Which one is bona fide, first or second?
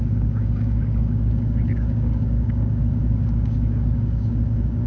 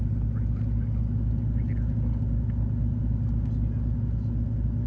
second